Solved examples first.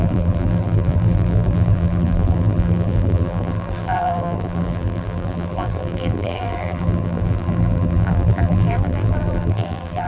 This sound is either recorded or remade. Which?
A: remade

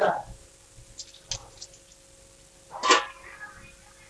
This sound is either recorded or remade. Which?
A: recorded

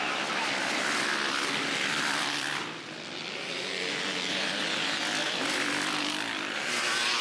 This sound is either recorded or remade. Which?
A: remade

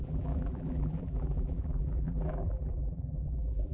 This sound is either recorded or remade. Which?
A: remade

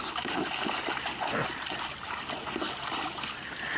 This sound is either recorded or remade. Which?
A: recorded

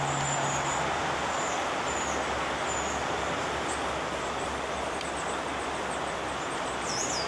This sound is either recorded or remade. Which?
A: recorded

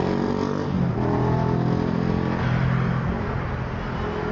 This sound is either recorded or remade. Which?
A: recorded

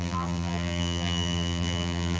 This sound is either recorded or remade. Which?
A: remade